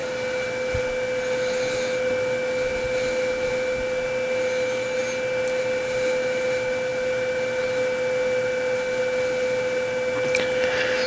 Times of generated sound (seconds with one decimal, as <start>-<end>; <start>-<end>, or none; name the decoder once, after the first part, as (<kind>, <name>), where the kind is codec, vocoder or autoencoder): none